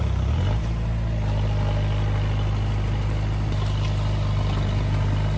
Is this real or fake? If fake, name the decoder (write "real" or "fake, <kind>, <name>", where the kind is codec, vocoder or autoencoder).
real